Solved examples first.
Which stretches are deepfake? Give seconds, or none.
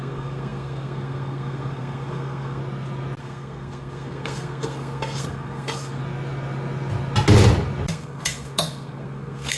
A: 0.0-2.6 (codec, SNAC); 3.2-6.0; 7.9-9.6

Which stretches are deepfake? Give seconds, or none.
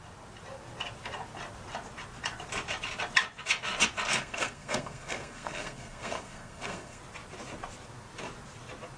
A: 4.1-7.0 (codec, SNAC)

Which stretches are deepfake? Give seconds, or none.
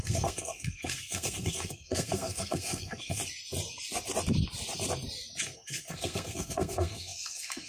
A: 0.0-3.2 (codec, SNAC); 5.4-7.7